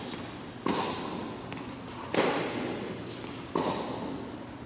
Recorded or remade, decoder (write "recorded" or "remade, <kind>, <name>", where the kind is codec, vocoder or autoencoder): recorded